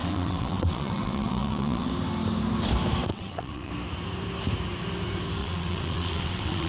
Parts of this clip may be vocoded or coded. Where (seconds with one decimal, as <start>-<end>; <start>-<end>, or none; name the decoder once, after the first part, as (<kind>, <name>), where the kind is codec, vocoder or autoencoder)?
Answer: 0.0-1.9 (vocoder, WaveNeXt); 3.1-3.7; 5.4-6.7